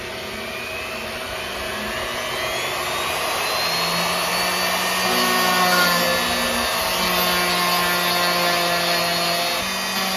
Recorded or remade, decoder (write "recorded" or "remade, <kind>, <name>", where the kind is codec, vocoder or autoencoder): recorded